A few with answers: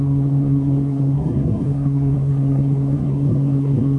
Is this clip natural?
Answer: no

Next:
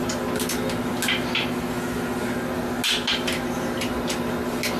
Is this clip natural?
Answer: yes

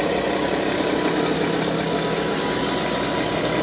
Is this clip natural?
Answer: yes